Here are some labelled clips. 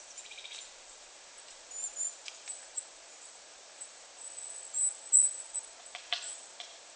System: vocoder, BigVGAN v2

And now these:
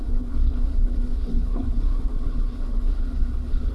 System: codec, HILCodec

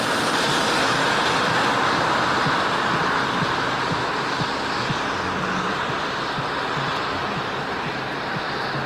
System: none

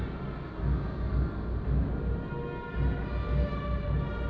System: none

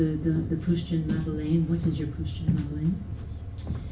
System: none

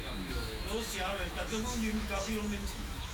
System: autoencoder, DAC-VAE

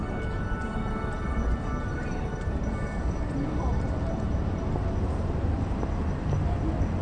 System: vocoder, BigVGAN v2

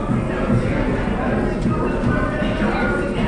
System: none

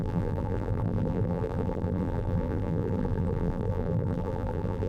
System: vocoder, BigVGAN v2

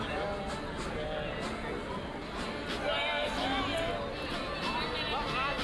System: none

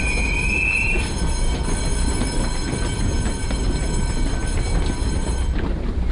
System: none